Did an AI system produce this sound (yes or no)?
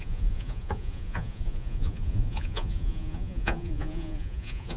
yes